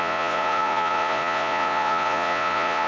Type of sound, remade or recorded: remade